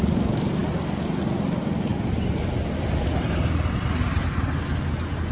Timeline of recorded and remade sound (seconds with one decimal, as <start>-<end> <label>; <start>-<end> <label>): 0.0-5.3 recorded